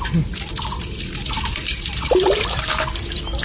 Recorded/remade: remade